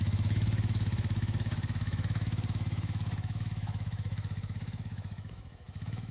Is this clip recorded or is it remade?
remade